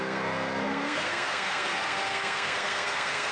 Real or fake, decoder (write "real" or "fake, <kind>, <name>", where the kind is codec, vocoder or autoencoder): fake, codec, SNAC